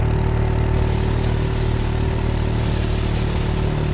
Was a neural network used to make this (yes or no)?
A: no